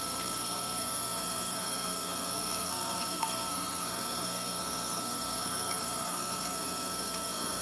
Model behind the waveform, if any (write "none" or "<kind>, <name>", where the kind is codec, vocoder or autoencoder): codec, SNAC